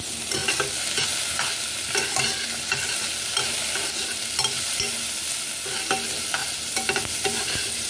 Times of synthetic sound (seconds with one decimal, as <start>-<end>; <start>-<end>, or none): none